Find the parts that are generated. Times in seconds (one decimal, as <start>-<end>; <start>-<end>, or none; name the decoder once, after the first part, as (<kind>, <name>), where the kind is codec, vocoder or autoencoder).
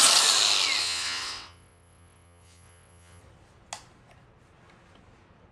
0.8-3.2 (vocoder, WaveNeXt)